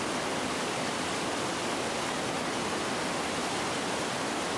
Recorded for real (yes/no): yes